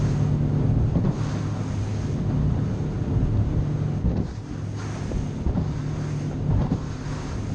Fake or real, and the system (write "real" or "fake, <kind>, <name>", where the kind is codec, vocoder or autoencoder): real